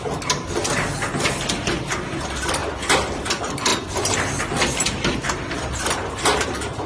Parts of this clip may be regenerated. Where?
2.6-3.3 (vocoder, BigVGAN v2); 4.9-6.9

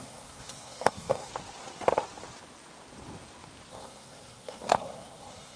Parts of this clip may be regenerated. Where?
0.0-1.3 (codec, SNAC); 3.7-5.6

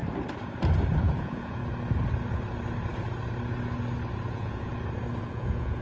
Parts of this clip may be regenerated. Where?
1.0-1.6 (vocoder, Vocos); 4.3-4.7; 5.3-5.8